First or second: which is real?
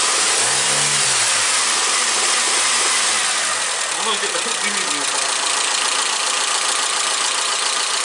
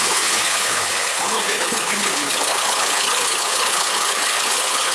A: first